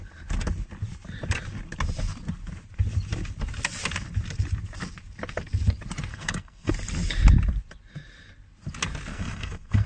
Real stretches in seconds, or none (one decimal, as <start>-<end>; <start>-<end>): 0.0-6.1; 6.7-9.1